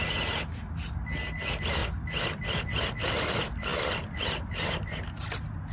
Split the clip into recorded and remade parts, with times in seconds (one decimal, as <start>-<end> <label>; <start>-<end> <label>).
0.0-5.7 recorded